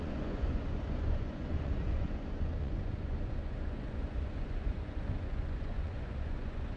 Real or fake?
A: fake